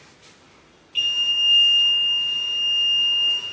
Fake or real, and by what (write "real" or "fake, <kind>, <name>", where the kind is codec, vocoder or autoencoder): real